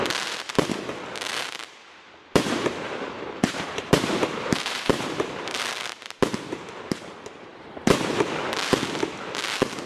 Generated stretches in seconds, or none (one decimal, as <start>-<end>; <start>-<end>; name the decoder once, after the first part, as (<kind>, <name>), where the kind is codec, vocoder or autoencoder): 1.6-5.6 (vocoder, BigVGAN v2)